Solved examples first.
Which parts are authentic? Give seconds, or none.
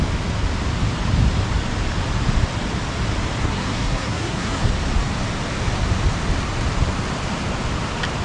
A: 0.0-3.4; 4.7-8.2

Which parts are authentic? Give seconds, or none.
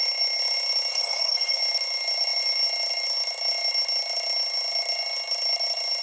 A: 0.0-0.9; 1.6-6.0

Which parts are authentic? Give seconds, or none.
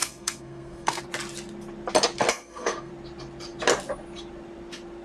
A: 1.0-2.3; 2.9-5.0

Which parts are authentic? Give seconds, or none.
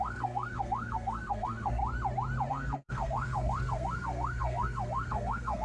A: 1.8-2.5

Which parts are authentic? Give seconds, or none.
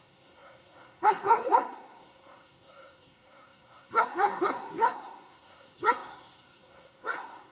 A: none